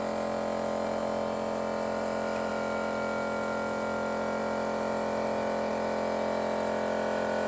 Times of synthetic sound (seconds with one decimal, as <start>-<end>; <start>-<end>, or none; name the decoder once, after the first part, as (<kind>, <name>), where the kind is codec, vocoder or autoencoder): none